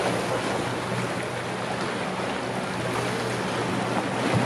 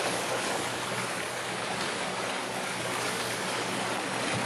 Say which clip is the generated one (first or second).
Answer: second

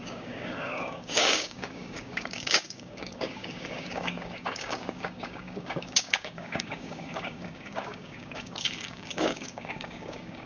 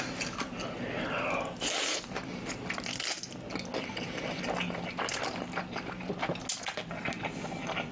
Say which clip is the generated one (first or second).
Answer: first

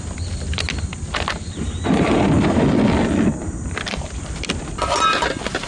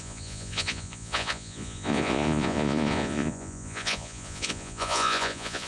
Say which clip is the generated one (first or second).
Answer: second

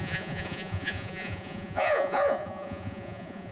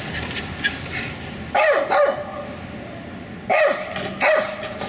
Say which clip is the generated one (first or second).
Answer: first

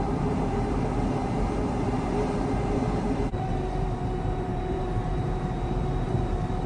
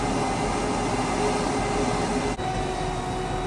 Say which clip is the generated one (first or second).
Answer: first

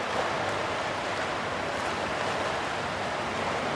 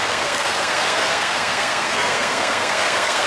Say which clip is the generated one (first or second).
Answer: second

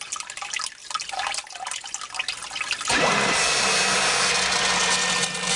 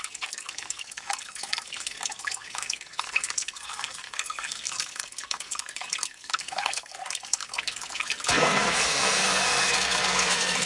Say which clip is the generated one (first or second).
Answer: second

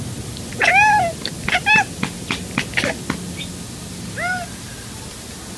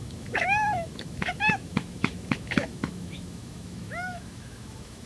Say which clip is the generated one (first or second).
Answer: second